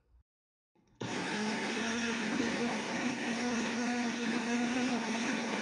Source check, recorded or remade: remade